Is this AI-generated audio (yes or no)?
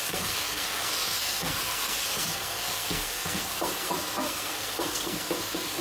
yes